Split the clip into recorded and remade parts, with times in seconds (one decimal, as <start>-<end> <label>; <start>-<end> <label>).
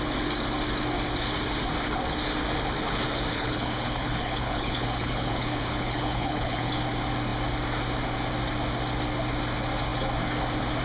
0.0-3.3 recorded; 3.3-6.7 remade; 6.7-10.8 recorded